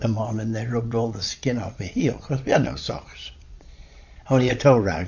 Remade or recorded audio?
remade